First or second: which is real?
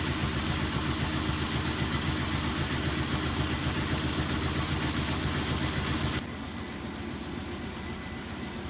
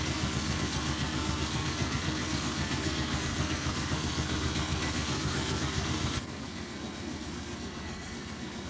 first